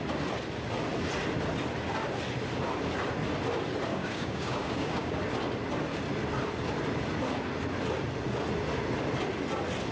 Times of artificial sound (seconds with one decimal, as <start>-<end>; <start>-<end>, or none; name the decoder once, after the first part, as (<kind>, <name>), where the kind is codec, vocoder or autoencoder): 3.9-5.2 (codec, DAC)